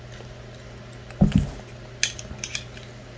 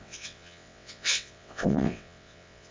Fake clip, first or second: second